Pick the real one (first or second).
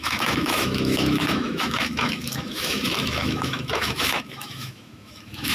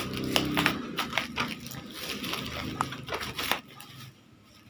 second